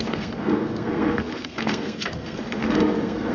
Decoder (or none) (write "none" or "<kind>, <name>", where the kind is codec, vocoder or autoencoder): codec, SNAC